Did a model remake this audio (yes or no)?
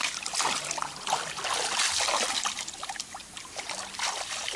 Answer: yes